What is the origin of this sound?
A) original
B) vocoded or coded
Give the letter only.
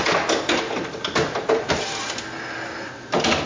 A